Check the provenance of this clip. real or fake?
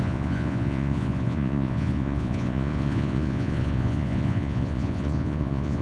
fake